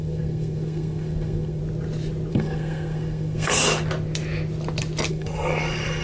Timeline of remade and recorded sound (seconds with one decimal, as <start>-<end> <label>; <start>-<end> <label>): 0.0-1.6 remade; 1.6-2.3 recorded; 2.3-3.6 remade; 3.6-5.1 recorded; 5.1-6.0 remade